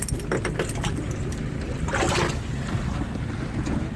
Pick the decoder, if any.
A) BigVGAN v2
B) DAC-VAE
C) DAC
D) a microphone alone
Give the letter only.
D